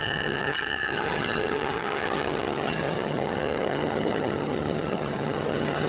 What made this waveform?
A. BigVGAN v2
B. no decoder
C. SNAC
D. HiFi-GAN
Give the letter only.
D